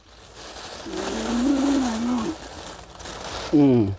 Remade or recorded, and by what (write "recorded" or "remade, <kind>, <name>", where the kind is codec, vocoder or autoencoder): recorded